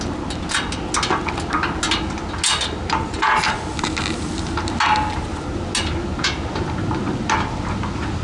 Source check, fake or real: real